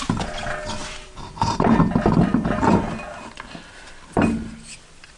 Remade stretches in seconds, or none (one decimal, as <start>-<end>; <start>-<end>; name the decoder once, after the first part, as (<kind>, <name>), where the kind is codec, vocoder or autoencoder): 0.8-1.8 (vocoder, BigVGAN v2); 2.3-3.3

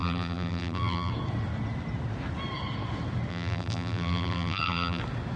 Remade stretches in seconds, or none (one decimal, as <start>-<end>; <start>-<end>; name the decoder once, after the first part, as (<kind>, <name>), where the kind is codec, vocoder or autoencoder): 0.0-1.1 (vocoder, BigVGAN v2); 3.3-5.0

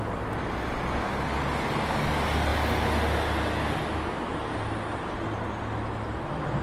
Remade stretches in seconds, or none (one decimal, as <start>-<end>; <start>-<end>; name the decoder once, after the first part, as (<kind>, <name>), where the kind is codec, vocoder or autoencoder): none